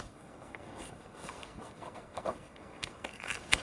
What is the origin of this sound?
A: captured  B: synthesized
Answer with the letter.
B